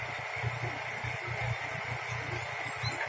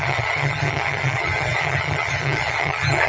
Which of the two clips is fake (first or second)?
second